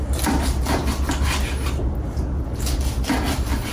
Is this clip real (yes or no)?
yes